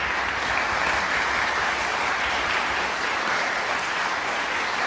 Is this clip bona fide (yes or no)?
yes